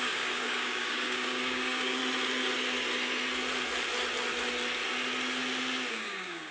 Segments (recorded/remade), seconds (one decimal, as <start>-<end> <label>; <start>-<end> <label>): 0.0-2.0 remade; 2.0-5.9 recorded; 5.9-6.5 remade